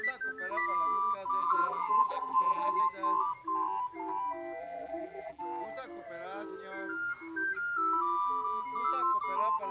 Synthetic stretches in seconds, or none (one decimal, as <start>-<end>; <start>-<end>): 1.4-2.8; 4.6-5.4